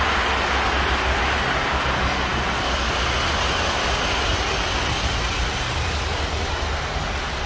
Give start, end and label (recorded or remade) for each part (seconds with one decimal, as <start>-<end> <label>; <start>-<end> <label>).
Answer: 0.0-7.5 recorded